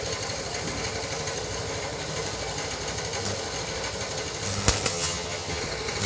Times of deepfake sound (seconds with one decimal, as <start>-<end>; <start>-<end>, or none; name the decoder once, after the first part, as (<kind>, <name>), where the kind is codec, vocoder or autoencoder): 4.9-5.6 (vocoder, HiFi-GAN)